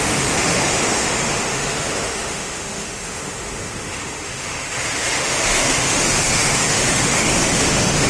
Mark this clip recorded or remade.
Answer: remade